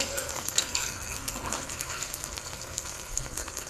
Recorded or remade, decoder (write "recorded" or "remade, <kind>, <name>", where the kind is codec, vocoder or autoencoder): remade, codec, SNAC